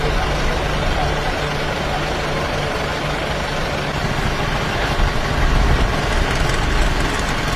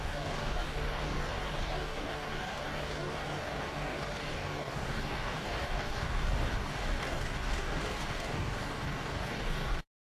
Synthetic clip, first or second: second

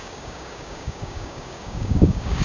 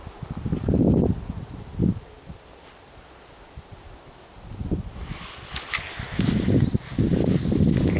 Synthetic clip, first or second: first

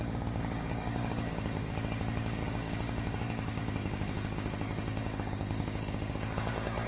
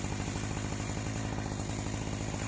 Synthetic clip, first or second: first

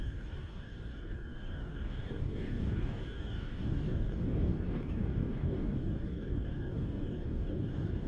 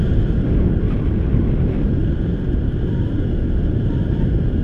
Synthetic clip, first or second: first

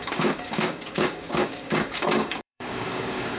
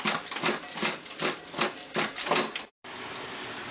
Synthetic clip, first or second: first